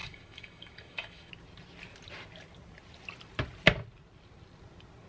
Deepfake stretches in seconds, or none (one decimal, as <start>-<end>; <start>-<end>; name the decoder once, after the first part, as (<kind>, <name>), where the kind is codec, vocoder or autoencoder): 0.0-1.3 (autoencoder, DAC-VAE)